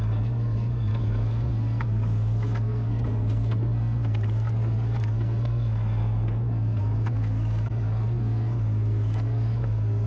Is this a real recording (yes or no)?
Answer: no